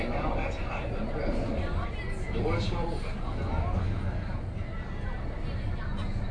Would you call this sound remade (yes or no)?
no